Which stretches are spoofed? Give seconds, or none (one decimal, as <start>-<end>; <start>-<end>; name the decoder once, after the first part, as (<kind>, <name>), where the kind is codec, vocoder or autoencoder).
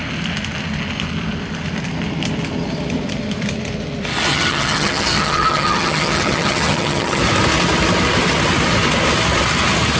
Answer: 4.3-7.2 (vocoder, HiFi-GAN)